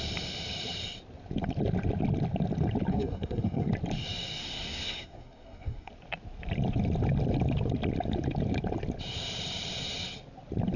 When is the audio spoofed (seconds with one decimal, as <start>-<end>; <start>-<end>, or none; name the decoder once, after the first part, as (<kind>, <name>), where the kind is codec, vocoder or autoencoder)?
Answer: 2.9-3.7 (codec, SNAC); 4.4-5.9